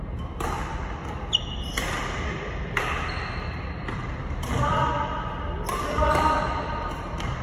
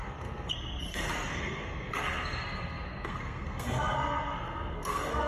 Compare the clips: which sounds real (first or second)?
first